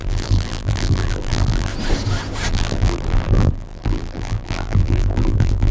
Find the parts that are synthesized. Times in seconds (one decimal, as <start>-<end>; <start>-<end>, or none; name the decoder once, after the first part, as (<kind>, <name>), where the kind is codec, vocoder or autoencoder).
0.0-1.7 (vocoder, BigVGAN v2); 2.5-5.7

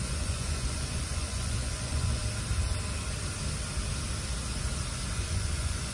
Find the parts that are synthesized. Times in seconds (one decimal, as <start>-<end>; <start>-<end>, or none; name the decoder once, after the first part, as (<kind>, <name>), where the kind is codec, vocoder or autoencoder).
0.0-2.2 (vocoder, Vocos); 5.1-5.9